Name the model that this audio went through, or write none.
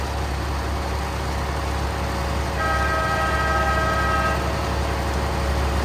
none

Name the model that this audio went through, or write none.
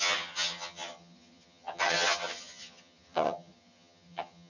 vocoder, HiFi-GAN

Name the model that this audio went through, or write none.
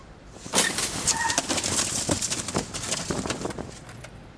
vocoder, BigVGAN v2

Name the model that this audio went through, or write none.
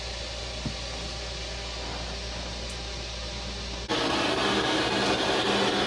none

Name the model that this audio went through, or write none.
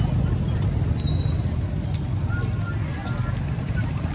none